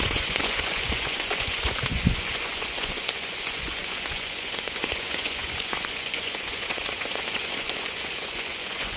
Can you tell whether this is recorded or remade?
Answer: remade